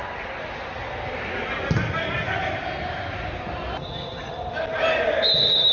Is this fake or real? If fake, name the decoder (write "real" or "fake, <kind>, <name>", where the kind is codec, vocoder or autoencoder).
real